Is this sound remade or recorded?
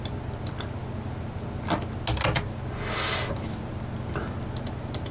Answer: recorded